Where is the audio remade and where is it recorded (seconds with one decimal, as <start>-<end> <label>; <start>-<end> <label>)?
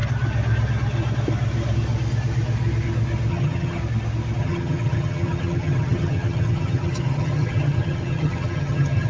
0.0-3.3 recorded; 3.3-3.8 remade; 3.8-4.4 recorded; 4.4-9.1 remade